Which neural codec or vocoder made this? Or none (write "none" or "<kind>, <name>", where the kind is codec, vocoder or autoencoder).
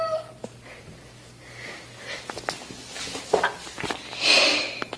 vocoder, BigVGAN v2